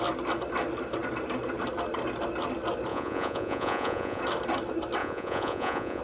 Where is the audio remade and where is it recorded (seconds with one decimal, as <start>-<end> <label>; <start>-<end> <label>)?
0.0-2.9 recorded; 2.9-4.2 remade; 4.2-5.0 recorded; 5.0-6.0 remade